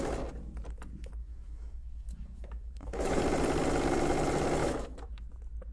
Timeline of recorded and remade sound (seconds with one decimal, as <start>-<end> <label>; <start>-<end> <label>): 0.0-1.2 recorded; 1.2-3.2 remade; 3.2-4.6 recorded; 4.6-5.1 remade; 5.1-5.7 recorded